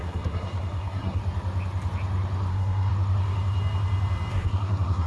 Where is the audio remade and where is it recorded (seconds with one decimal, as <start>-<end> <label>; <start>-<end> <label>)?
0.0-1.2 remade; 1.2-2.5 recorded; 2.5-2.9 remade; 2.9-4.3 recorded; 4.3-5.1 remade